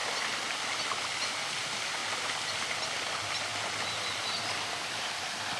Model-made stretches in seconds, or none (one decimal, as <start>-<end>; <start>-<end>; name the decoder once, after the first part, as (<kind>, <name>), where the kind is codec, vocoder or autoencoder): 1.1-3.5 (vocoder, BigVGAN v2); 4.9-5.6